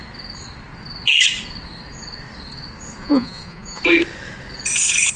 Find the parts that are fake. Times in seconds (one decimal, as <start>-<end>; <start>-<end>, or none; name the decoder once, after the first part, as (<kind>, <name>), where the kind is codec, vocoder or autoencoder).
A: 3.0-3.8 (vocoder, Vocos)